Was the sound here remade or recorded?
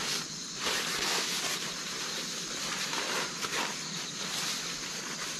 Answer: recorded